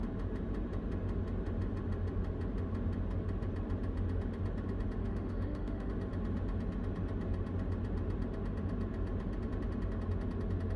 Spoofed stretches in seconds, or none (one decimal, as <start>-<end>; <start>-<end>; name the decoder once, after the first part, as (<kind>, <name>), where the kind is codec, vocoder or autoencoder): 5.0-5.9 (autoencoder, DAC-VAE)